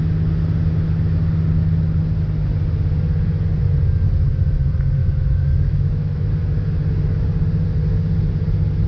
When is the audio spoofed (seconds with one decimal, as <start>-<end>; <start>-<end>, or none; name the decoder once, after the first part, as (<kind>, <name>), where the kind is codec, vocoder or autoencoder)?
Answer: 5.0-6.3 (autoencoder, DAC-VAE)